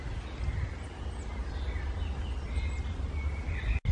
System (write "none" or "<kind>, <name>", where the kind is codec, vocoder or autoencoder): none